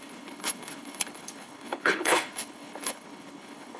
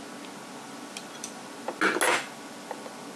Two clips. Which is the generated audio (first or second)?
first